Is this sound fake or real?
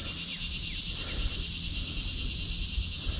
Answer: real